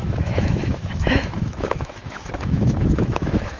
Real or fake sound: fake